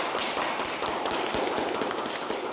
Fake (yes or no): no